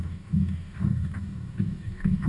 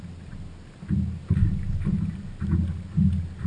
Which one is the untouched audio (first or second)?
second